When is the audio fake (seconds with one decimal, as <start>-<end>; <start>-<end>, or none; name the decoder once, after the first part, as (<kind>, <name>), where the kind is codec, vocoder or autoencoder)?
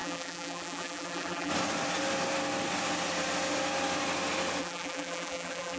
0.0-1.5 (vocoder, BigVGAN v2); 4.6-5.8